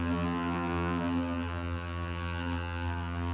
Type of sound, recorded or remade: remade